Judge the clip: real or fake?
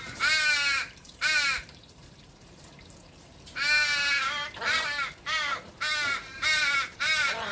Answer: fake